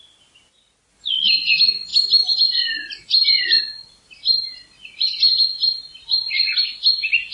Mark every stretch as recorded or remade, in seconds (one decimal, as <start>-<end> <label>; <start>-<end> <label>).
0.0-7.3 recorded